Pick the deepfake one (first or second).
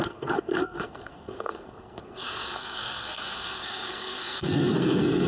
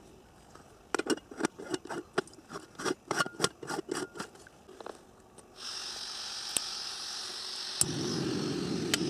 first